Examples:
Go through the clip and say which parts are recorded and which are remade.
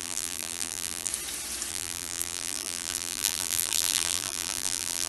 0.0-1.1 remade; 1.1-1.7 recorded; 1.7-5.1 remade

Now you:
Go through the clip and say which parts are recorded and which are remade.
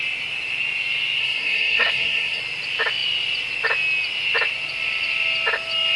0.0-1.2 recorded; 1.2-2.4 remade; 2.4-6.0 recorded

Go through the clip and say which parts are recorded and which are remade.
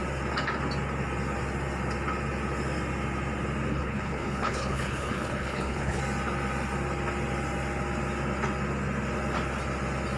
0.0-3.7 recorded; 3.7-6.0 remade; 6.0-10.2 recorded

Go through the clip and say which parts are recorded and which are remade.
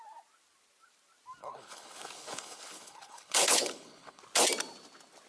0.0-1.4 recorded; 1.4-4.2 remade; 4.2-5.3 recorded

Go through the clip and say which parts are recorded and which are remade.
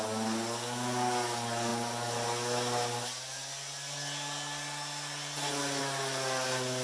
0.0-6.8 recorded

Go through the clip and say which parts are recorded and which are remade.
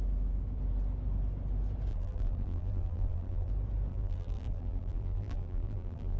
0.0-1.9 recorded; 1.9-3.5 remade; 3.5-3.9 recorded; 3.9-6.2 remade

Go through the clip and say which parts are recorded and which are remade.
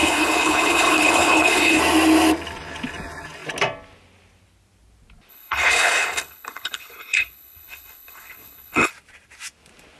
0.0-1.8 remade; 1.8-5.3 recorded; 5.3-8.9 remade; 8.9-10.0 recorded